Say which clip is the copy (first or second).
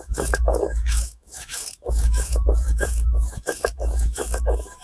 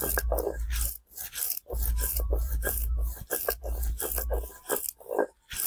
first